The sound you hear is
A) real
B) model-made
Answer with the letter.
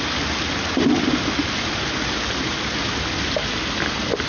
A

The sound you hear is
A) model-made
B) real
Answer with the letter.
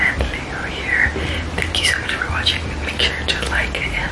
B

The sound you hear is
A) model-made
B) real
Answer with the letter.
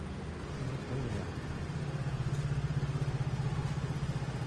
B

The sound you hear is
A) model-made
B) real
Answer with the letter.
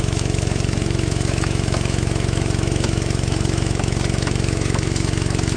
A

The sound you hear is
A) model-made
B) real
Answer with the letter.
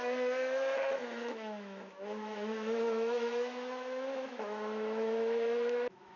A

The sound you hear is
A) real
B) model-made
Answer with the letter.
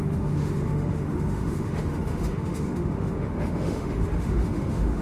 B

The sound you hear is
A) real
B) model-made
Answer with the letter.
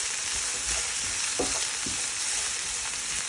A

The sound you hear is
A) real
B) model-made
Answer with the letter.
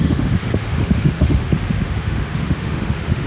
B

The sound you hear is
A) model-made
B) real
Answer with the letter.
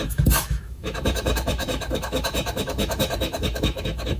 A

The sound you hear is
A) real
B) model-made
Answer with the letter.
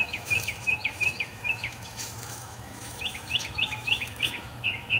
B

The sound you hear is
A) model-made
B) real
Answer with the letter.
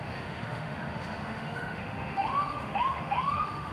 A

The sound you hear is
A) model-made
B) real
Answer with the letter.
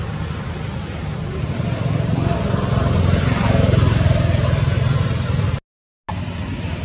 B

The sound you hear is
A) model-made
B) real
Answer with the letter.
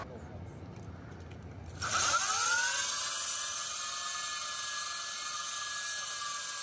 B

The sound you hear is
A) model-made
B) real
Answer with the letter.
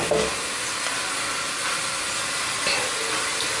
B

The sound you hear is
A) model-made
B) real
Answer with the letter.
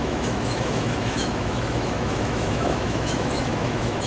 A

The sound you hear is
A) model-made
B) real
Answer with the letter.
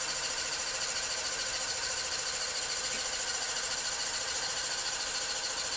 B